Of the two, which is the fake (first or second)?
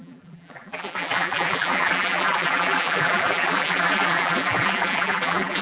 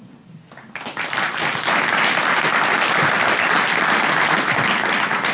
first